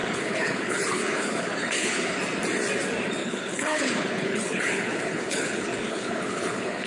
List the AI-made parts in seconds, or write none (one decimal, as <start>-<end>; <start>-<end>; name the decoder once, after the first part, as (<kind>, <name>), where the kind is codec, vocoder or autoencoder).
0.0-2.2 (codec, HILCodec); 3.2-6.9